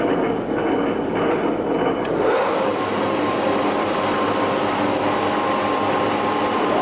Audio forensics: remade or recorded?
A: recorded